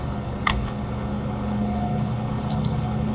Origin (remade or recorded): remade